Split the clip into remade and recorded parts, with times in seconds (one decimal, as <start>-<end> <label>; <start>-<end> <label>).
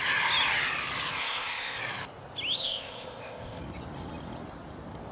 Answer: 0.0-1.2 recorded; 1.2-1.8 remade; 1.8-2.6 recorded; 2.6-3.6 remade; 3.6-5.1 recorded